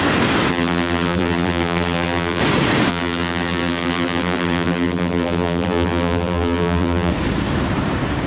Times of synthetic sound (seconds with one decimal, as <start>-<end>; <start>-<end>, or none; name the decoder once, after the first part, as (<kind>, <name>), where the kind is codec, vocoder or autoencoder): 0.5-2.4 (vocoder, BigVGAN v2); 2.9-7.1